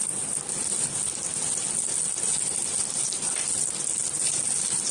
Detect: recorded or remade recorded